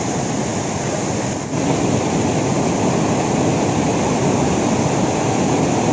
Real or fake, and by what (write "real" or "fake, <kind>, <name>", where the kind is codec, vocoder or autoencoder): real